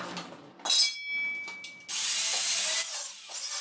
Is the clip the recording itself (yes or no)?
yes